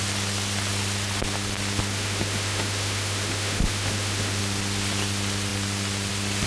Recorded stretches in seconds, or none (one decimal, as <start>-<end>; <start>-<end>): 0.0-1.9; 4.4-6.5